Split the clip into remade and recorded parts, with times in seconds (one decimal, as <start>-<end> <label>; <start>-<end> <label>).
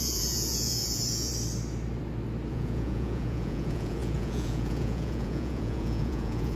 0.0-1.3 remade; 1.3-2.5 recorded; 2.5-6.6 remade